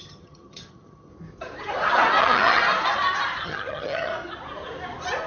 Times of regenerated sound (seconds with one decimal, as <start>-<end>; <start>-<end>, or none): 0.0-1.1; 2.2-2.6; 3.4-4.1